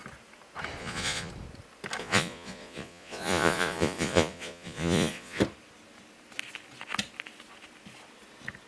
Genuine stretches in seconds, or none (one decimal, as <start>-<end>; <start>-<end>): 0.0-0.8; 1.3-2.0; 5.4-8.7